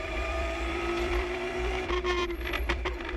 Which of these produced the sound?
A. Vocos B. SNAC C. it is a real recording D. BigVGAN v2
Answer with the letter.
D